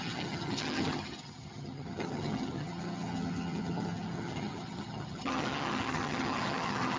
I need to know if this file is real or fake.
fake